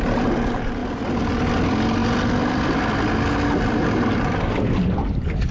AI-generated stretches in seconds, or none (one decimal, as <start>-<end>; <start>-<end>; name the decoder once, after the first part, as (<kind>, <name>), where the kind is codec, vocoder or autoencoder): none